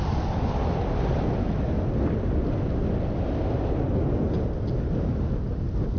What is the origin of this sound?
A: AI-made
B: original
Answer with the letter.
B